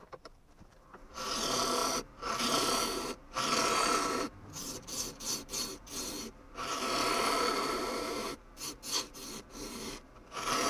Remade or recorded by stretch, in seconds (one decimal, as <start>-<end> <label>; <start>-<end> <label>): 0.0-10.7 remade